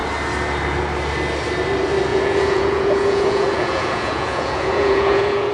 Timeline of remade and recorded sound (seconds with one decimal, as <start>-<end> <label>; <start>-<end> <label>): 0.0-2.1 recorded; 2.1-5.5 remade